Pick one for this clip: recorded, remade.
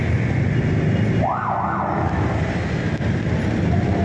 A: recorded